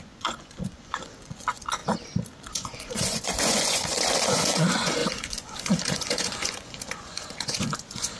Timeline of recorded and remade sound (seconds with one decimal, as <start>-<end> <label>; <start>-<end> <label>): 0.0-1.8 remade; 1.8-2.5 recorded; 2.5-8.2 remade